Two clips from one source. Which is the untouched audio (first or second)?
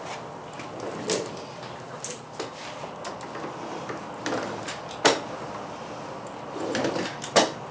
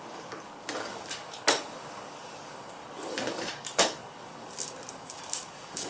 first